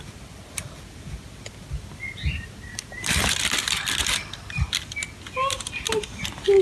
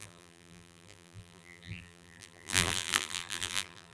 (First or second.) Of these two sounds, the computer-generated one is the second